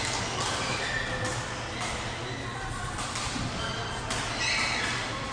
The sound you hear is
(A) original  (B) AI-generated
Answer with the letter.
A